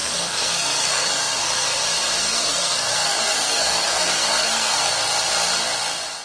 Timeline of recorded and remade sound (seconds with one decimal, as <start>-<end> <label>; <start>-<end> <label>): 0.0-1.8 remade; 1.8-2.2 recorded; 2.2-4.9 remade; 4.9-6.2 recorded